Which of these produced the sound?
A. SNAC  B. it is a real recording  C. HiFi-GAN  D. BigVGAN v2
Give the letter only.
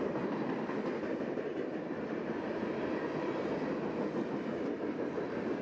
B